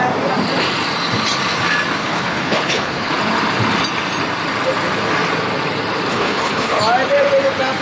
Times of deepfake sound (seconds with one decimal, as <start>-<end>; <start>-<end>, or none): 2.0-3.1; 6.1-6.8